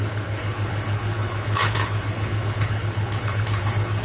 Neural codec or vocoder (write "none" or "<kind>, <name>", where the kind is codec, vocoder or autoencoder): codec, HILCodec